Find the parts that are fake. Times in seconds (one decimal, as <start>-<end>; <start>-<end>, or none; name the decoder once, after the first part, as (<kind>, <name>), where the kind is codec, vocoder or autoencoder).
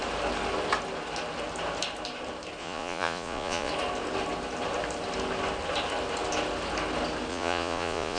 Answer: 2.6-3.7 (vocoder, Vocos); 7.3-8.2